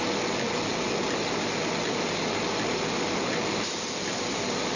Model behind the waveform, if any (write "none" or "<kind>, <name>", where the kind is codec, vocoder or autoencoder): none